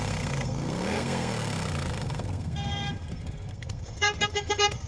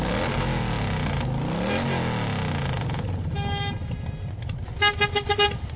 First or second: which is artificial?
first